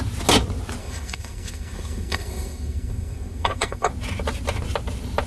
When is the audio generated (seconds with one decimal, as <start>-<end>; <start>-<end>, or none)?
0.8-3.9